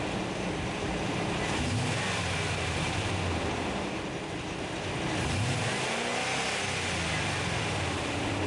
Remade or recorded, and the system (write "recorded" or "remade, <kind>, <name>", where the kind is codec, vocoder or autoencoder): recorded